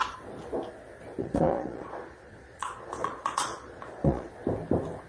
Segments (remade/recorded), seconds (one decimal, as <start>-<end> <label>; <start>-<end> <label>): 0.0-1.2 recorded; 1.2-4.3 remade; 4.3-5.1 recorded